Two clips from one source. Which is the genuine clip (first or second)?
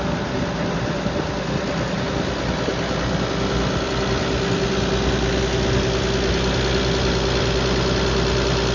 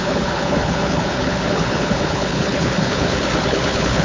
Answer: first